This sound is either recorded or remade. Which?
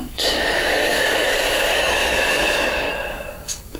remade